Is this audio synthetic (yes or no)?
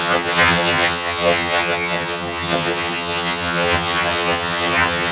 yes